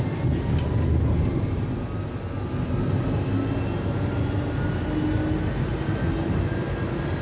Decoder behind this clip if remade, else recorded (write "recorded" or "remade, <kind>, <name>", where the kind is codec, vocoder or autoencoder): recorded